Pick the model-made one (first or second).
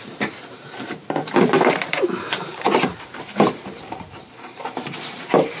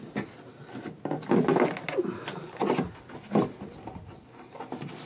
first